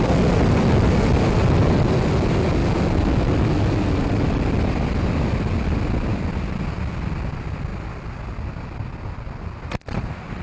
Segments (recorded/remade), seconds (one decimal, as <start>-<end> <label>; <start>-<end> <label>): 0.0-10.4 recorded